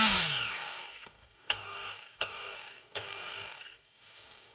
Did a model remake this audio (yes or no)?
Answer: yes